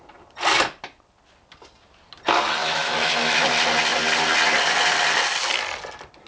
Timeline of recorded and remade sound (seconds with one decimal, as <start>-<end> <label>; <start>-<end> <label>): 0.0-2.6 recorded; 2.6-3.5 remade; 3.5-6.3 recorded